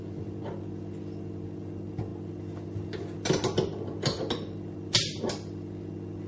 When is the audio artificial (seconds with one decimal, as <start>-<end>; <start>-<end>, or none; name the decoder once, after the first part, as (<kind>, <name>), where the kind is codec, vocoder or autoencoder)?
none